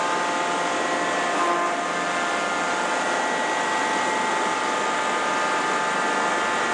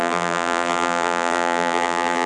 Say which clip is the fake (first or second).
second